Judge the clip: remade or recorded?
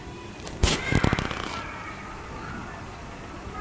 recorded